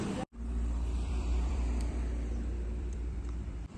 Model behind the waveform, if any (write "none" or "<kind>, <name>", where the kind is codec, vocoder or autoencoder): vocoder, BigVGAN v2